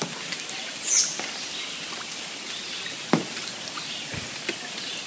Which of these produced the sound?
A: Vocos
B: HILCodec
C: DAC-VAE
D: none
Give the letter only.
D